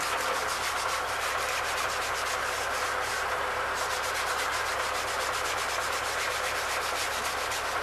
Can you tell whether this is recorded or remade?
recorded